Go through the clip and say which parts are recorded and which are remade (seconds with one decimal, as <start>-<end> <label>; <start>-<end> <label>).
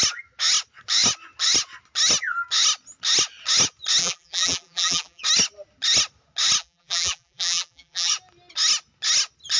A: 0.0-4.0 recorded; 4.0-5.2 remade; 5.2-6.6 recorded; 6.6-8.1 remade; 8.1-9.6 recorded